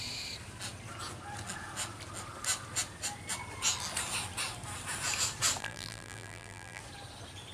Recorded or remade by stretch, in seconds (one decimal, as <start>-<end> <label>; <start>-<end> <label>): 0.0-5.6 recorded; 5.6-6.8 remade; 6.8-7.5 recorded